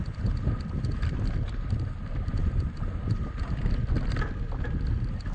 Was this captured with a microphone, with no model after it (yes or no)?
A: yes